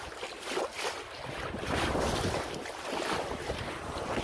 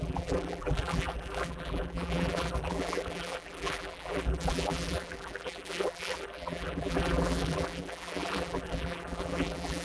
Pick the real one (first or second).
first